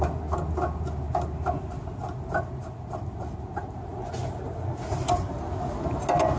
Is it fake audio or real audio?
real